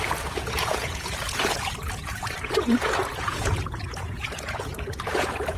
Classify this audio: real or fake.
fake